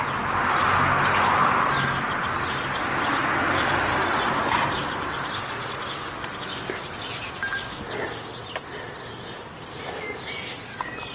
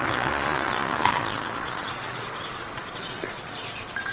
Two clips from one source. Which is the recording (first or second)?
first